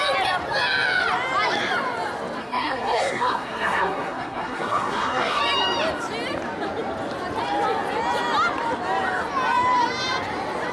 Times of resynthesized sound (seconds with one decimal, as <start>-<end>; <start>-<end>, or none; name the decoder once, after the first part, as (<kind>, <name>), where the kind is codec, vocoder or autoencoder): 2.4-5.4 (codec, SNAC)